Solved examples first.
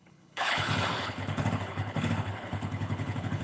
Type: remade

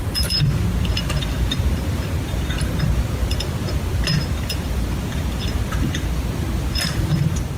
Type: remade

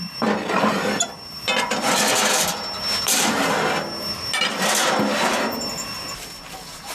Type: recorded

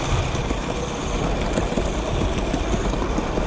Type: recorded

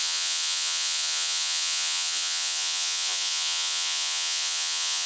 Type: remade